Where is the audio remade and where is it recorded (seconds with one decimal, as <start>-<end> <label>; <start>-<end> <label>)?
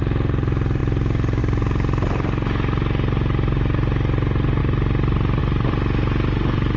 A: 0.0-6.8 recorded